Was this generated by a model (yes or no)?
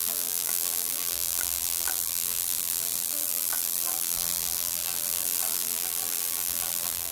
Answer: yes